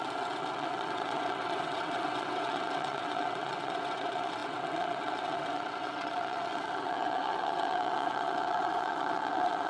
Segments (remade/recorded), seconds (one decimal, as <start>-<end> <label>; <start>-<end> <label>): 0.0-9.7 remade